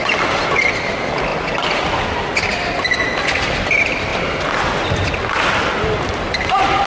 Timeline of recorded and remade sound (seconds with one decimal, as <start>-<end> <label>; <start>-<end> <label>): 0.0-6.9 recorded